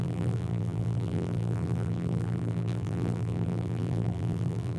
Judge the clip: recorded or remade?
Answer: remade